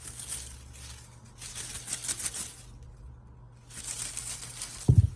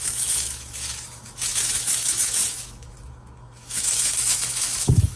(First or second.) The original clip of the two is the first